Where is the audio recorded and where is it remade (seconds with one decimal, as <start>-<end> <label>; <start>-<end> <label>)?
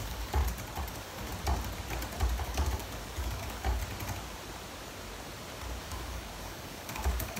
0.0-0.4 remade; 0.4-0.9 recorded; 0.9-1.3 remade; 1.3-2.4 recorded; 2.4-3.8 remade; 3.8-5.8 recorded; 5.8-7.4 remade